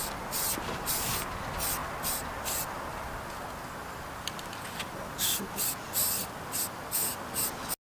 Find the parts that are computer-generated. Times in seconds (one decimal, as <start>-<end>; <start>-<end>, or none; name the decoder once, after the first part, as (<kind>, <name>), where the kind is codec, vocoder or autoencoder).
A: none